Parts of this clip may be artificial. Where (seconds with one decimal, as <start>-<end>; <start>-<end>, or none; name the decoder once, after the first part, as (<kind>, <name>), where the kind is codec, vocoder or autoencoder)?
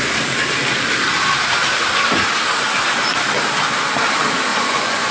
4.5-5.1 (vocoder, Vocos)